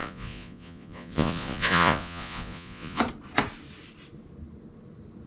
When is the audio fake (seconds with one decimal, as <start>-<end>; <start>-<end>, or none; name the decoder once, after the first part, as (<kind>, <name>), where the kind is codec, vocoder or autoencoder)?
0.0-3.0 (vocoder, Vocos)